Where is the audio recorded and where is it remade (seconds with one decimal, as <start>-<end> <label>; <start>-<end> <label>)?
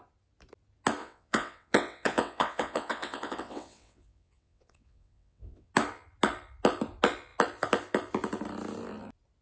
0.0-1.0 recorded; 1.0-5.7 remade; 5.7-9.4 recorded